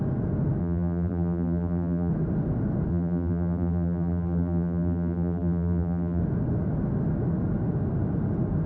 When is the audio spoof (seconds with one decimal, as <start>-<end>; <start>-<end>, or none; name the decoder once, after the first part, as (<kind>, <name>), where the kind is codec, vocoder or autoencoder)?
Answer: 0.6-2.1 (vocoder, BigVGAN v2); 2.9-6.2